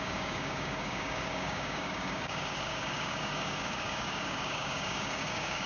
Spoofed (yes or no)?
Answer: yes